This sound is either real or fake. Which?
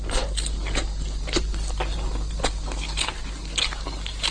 real